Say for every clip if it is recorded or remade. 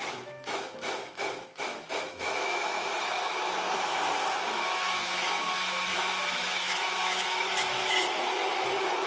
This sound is remade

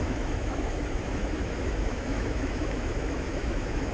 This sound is remade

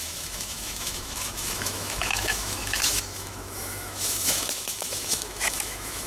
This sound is remade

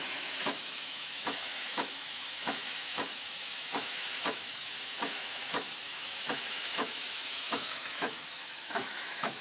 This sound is remade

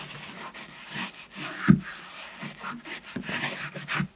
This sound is recorded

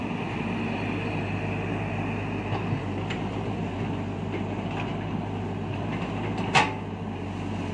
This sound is recorded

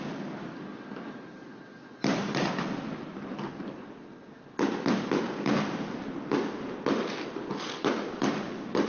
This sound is recorded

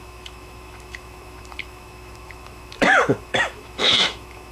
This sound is remade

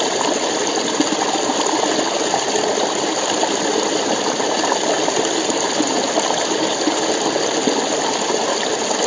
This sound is recorded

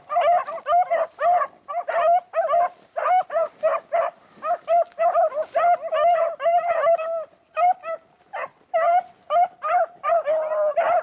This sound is recorded